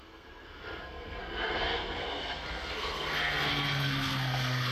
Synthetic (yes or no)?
yes